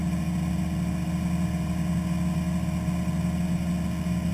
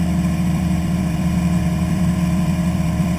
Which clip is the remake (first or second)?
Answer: second